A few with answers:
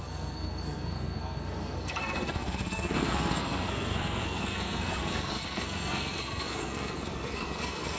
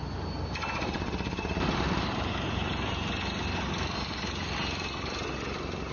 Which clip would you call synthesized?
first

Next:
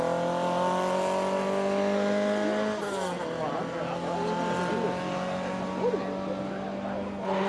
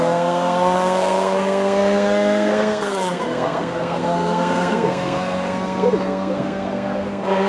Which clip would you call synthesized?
second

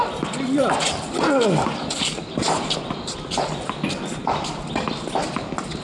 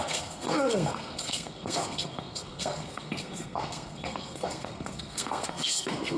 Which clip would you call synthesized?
second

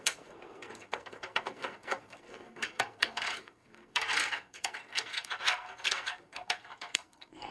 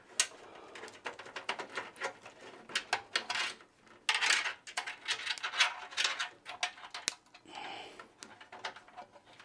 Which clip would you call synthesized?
first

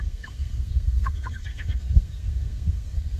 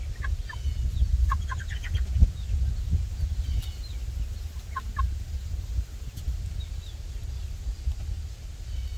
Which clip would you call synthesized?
first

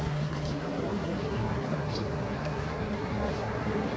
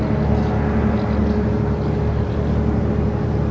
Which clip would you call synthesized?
first